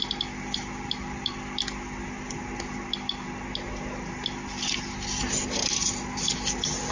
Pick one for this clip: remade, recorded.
recorded